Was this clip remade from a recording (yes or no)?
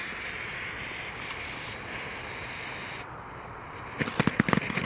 no